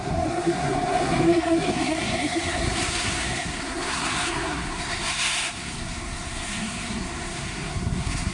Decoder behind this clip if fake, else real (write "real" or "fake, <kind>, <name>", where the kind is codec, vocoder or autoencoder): fake, codec, SNAC